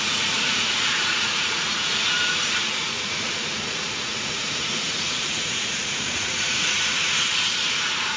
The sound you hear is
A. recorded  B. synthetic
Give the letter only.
B